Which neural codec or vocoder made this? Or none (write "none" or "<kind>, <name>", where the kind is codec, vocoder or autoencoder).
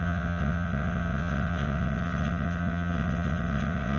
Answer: vocoder, WaveNeXt